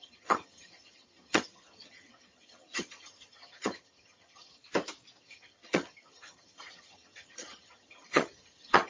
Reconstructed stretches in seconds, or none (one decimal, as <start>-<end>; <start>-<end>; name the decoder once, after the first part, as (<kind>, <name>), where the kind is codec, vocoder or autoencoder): 0.0-4.6 (vocoder, HiFi-GAN); 5.2-8.9